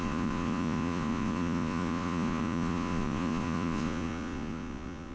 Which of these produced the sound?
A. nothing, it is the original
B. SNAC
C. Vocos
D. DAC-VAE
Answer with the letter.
C